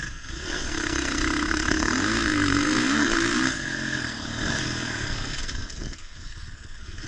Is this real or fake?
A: fake